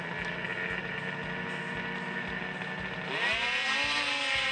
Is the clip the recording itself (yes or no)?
yes